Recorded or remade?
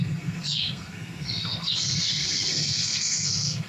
remade